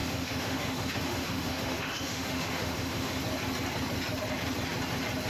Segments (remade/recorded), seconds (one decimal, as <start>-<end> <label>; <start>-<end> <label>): 0.0-3.2 remade; 3.2-5.3 recorded